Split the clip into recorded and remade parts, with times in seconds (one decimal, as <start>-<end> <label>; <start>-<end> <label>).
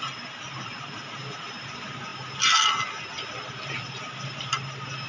0.0-5.1 recorded